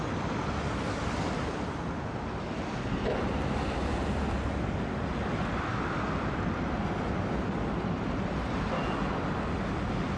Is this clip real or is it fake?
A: real